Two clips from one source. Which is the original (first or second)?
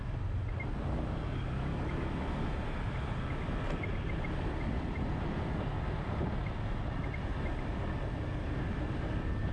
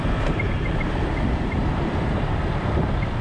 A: first